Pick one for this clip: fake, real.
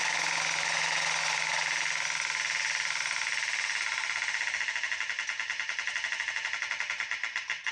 real